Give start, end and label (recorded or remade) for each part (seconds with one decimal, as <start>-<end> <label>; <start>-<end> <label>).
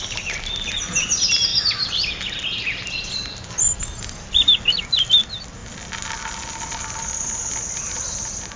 0.0-8.6 recorded